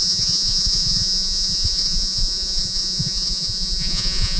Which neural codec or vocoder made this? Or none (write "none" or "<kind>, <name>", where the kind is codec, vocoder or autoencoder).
vocoder, Vocos